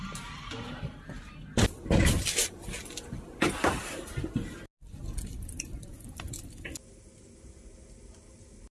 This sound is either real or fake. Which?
real